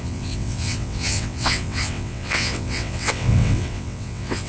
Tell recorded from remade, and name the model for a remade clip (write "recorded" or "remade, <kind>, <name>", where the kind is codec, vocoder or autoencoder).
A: remade, vocoder, WaveNeXt